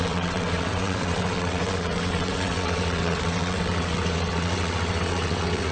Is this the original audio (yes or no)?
no